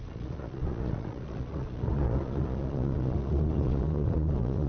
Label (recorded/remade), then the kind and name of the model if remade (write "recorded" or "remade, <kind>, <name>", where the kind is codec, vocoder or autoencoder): remade, vocoder, Vocos